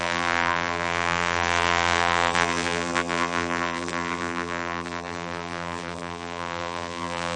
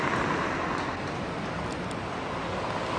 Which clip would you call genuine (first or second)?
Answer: second